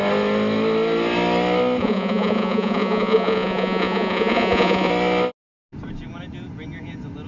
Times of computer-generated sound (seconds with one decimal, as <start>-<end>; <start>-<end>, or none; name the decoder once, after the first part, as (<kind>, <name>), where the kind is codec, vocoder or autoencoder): 1.8-4.9 (vocoder, Vocos)